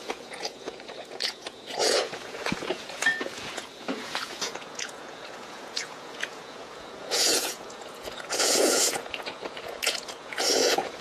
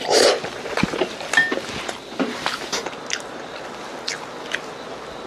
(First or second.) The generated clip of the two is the first